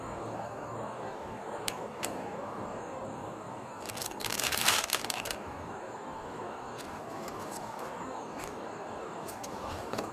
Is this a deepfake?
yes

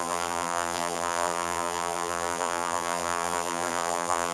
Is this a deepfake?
yes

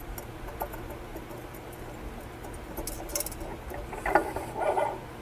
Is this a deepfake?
no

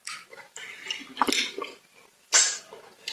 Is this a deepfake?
yes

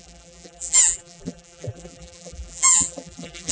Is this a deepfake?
yes